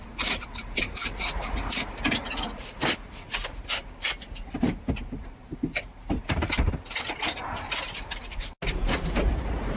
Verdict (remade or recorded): recorded